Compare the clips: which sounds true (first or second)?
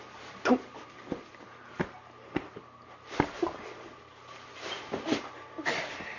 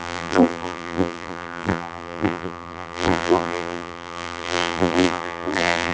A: first